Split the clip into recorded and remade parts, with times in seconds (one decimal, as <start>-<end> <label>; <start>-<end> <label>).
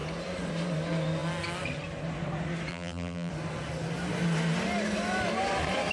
0.0-2.7 recorded; 2.7-3.3 remade; 3.3-5.9 recorded